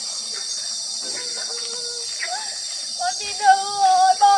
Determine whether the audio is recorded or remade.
recorded